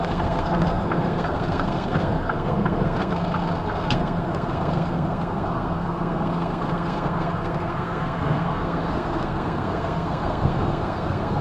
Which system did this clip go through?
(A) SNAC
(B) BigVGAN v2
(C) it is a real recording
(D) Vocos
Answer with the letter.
A